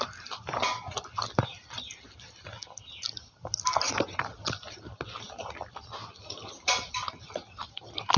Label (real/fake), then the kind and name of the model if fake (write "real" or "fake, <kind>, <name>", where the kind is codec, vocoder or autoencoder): real